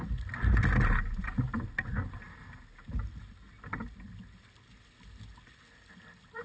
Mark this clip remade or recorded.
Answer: recorded